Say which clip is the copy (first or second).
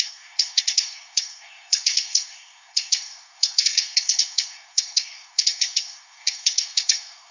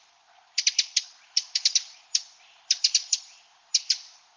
first